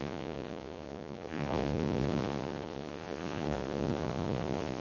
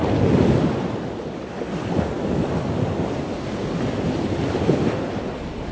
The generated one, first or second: first